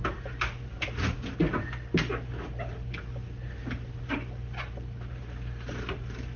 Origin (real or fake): real